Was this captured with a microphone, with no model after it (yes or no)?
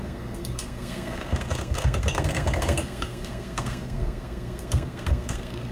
no